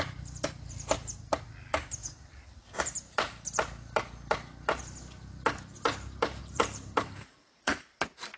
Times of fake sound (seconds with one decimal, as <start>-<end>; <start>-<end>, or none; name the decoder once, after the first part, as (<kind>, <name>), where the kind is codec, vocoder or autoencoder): 2.0-2.8 (vocoder, BigVGAN v2); 6.4-8.0